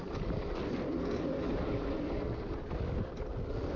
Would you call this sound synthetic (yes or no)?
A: no